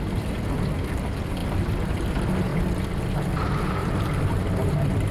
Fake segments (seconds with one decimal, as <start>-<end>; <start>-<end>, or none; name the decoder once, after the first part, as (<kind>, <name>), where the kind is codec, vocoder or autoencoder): 2.5-3.2 (vocoder, BigVGAN v2); 3.8-4.4